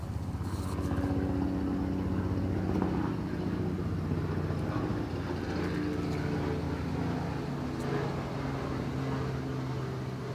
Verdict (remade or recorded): recorded